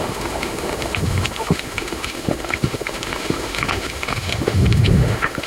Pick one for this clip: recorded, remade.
remade